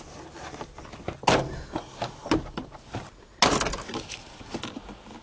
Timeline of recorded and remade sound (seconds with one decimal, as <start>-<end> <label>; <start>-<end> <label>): 0.0-5.2 recorded